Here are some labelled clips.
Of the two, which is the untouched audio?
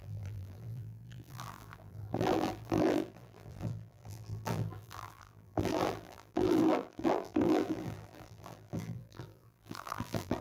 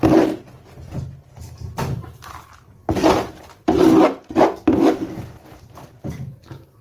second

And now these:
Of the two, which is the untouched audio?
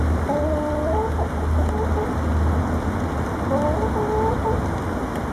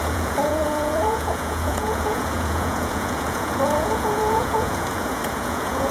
first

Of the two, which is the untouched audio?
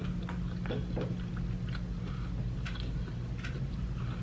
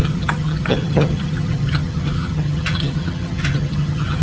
first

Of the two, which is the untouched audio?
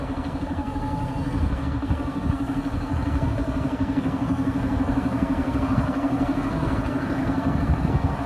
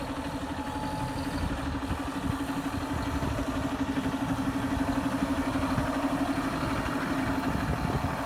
second